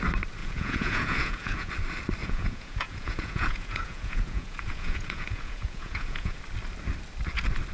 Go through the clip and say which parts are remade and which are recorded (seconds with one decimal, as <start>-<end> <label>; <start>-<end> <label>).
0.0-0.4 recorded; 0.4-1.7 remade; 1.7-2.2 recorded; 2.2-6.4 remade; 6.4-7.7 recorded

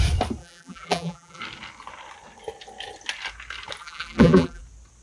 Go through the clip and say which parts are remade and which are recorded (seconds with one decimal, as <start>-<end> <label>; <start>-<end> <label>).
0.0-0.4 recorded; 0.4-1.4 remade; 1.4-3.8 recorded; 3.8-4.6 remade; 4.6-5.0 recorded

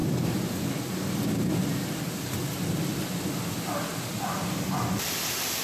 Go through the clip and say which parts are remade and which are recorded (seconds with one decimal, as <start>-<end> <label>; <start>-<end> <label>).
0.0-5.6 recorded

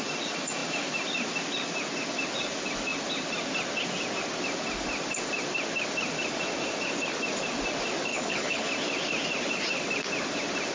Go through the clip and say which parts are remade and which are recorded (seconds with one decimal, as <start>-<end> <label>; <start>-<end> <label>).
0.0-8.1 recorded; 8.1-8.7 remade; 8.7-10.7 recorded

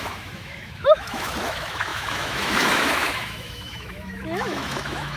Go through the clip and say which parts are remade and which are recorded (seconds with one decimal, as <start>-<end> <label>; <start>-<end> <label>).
0.0-5.2 remade

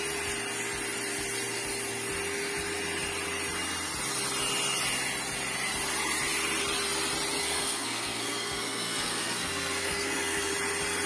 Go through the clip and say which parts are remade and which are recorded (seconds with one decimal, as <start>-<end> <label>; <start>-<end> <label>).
0.0-7.4 recorded; 7.4-10.5 remade; 10.5-11.1 recorded

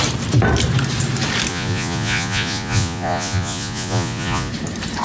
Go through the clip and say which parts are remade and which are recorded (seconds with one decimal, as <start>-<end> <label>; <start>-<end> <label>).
0.0-1.5 recorded; 1.5-4.5 remade; 4.5-5.0 recorded